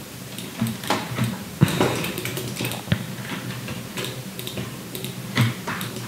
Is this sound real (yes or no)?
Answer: no